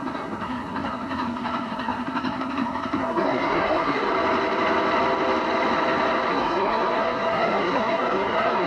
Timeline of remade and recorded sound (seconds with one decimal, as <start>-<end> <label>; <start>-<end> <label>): 0.0-4.1 remade; 4.1-6.3 recorded; 6.3-8.7 remade